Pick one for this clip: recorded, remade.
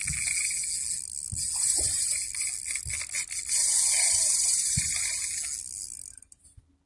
recorded